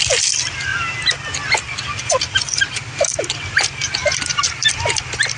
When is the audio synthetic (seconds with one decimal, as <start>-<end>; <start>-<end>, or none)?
none